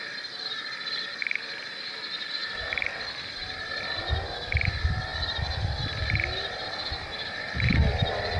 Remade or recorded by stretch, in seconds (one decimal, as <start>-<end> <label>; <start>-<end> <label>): 0.0-5.1 recorded; 5.1-6.5 remade; 6.5-8.4 recorded